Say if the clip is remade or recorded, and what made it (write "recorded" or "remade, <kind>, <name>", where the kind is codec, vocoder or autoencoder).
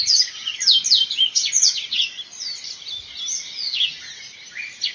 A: recorded